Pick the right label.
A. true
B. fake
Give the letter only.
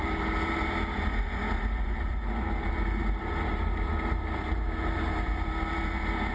B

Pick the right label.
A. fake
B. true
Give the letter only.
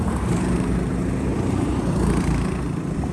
A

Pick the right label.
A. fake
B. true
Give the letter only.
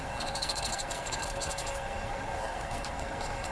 A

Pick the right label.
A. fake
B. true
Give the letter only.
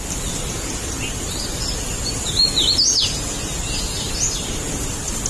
B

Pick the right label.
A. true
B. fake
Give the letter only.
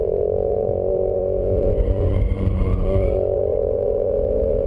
B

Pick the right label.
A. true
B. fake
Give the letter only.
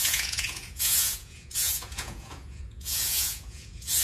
B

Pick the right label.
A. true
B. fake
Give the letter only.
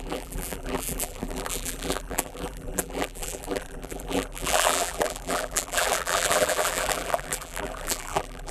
B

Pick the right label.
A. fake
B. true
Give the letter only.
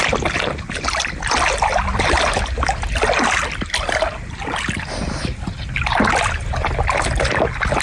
B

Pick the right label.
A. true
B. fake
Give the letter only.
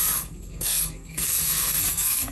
B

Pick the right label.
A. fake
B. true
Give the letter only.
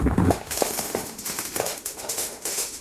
A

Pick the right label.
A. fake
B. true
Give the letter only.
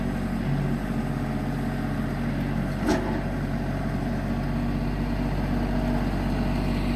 B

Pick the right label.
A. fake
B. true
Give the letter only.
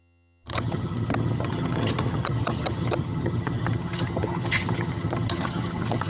A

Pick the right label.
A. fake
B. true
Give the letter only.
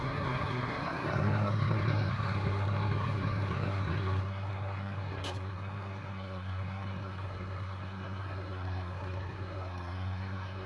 A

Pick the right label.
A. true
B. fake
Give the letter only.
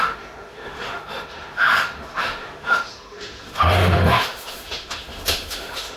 B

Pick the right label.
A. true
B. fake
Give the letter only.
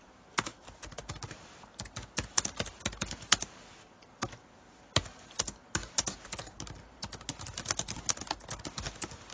A